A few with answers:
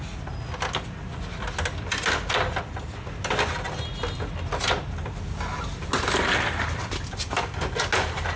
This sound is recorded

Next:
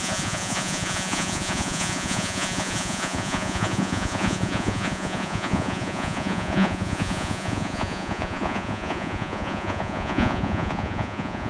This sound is remade